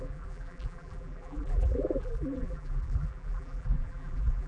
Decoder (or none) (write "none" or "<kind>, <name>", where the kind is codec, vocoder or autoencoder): vocoder, BigVGAN v2